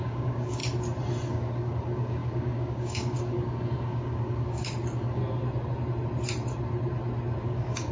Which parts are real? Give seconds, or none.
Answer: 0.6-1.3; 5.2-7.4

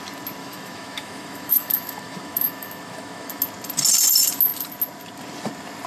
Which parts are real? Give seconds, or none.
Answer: 0.0-0.4; 3.4-5.9

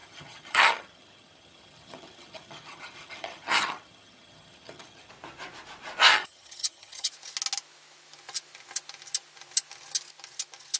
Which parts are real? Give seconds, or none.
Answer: 5.1-6.1; 7.1-10.8

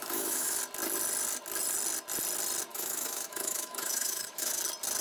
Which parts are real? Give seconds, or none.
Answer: 0.6-2.7; 4.6-5.0

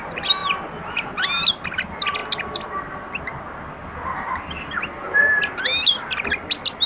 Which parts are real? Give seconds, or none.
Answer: 0.0-6.9